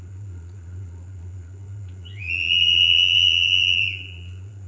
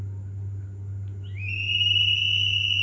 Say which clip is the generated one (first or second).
first